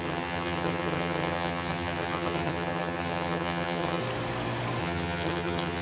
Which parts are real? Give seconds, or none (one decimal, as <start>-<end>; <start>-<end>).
4.0-4.8